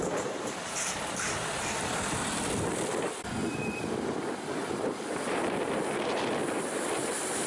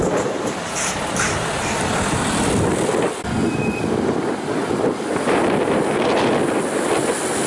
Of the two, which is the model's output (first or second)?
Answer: first